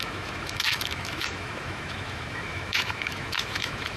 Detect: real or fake fake